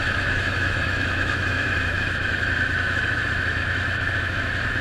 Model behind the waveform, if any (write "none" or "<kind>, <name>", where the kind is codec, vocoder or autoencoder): autoencoder, DAC-VAE